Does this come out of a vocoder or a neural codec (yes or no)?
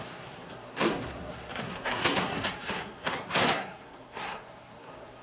yes